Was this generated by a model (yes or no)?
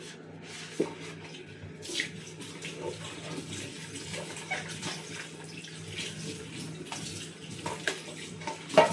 no